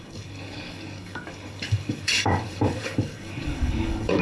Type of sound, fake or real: fake